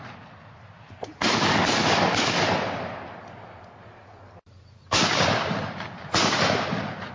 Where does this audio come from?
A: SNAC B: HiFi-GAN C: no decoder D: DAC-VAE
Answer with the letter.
C